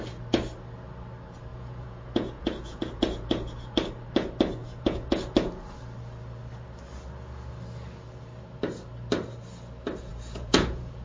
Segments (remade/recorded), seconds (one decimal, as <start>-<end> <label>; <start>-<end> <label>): 0.0-1.5 recorded; 1.5-3.5 remade; 3.5-4.6 recorded; 4.6-5.2 remade; 5.2-10.1 recorded; 10.1-11.0 remade